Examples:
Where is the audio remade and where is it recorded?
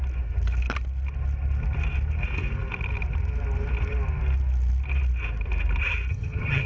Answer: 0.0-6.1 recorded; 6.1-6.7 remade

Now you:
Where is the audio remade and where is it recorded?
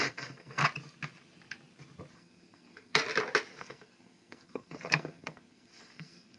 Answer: 0.0-0.6 remade; 0.6-2.1 recorded; 2.1-3.0 remade; 3.0-3.5 recorded; 3.5-6.4 remade